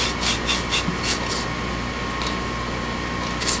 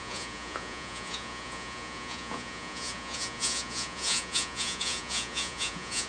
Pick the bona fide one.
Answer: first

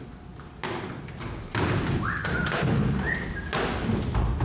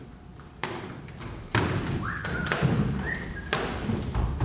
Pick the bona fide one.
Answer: first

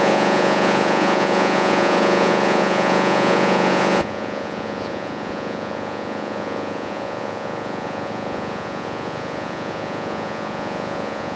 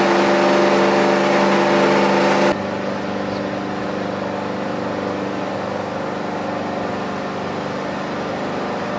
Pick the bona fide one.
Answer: second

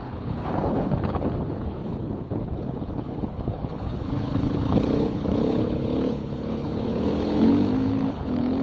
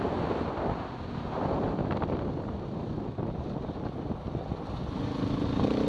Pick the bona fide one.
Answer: second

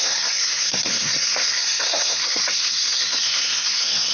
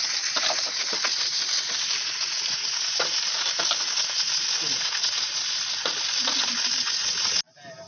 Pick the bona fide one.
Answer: second